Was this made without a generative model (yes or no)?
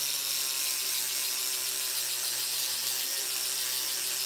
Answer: no